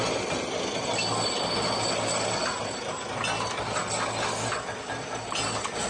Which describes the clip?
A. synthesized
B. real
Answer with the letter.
B